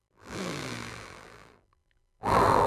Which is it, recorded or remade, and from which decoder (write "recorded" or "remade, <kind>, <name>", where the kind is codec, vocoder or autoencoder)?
remade, vocoder, BigVGAN v2